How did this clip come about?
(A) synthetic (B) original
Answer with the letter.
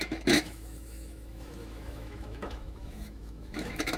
A